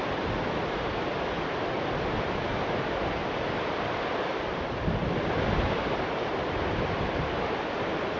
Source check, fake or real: real